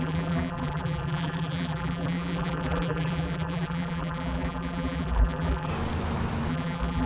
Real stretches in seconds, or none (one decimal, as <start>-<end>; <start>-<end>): 5.7-6.5